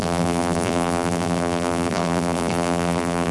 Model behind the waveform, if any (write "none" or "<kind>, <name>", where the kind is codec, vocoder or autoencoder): vocoder, BigVGAN v2